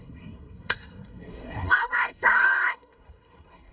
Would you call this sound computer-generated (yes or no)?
yes